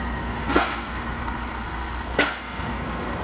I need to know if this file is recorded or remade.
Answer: remade